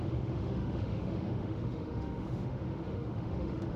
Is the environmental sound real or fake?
fake